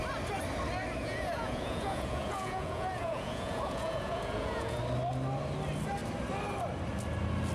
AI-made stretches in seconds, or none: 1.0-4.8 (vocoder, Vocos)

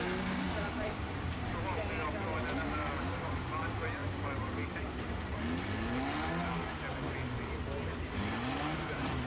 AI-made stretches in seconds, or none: none

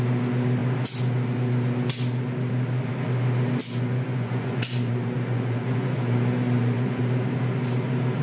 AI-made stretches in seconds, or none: 3.6-7.0 (vocoder, Vocos)

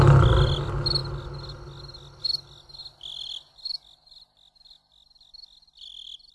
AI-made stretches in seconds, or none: none

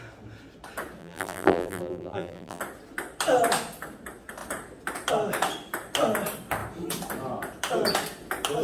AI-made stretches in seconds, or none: 1.0-2.6 (vocoder, BigVGAN v2)

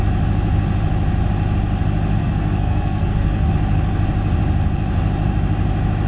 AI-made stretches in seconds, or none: 2.2-3.5 (codec, SNAC)

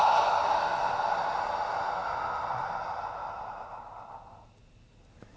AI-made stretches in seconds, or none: none

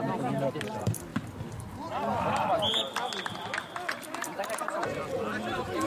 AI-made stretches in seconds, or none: none